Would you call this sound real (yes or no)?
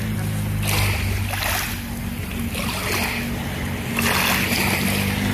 yes